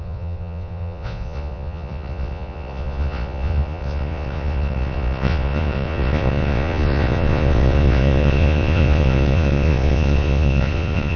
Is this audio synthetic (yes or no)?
yes